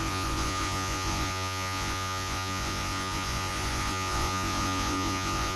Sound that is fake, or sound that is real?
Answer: fake